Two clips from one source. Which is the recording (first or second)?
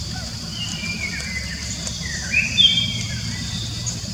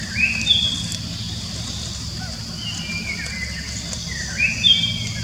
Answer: second